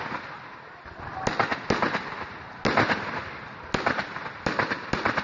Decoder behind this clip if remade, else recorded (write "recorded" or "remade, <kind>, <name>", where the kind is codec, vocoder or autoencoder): recorded